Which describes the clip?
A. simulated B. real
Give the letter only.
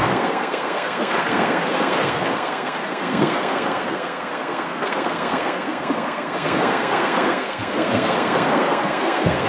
A